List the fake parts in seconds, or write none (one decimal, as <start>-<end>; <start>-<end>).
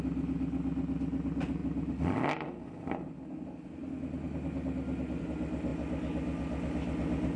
none